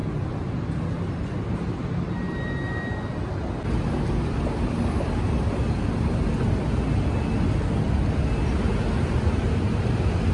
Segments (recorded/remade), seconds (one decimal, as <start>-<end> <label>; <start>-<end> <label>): 0.0-10.3 recorded